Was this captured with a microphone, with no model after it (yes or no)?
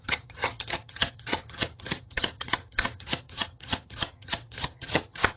no